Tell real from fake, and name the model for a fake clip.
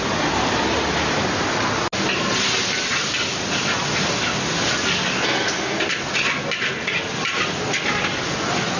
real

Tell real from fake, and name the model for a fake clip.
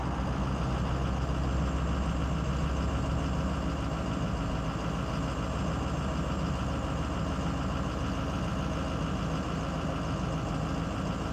real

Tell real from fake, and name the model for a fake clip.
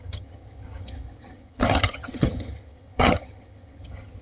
fake, vocoder, HiFi-GAN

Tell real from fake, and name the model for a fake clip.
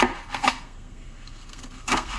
fake, codec, SNAC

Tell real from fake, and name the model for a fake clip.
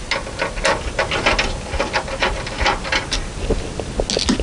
real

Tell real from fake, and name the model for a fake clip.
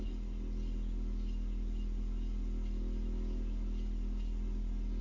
real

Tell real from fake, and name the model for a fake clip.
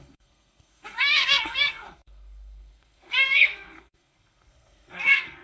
fake, codec, SNAC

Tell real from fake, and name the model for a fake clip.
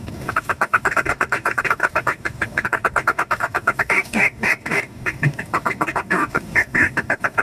fake, codec, DAC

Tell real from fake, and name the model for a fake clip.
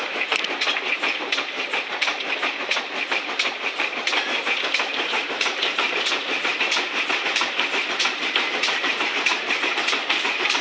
fake, vocoder, BigVGAN v2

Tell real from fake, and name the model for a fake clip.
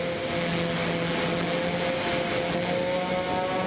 real